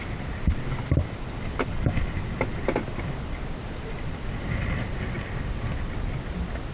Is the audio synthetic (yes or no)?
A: no